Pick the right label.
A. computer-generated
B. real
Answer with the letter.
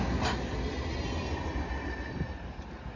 B